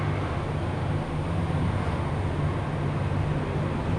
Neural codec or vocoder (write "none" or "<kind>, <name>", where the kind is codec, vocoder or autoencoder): none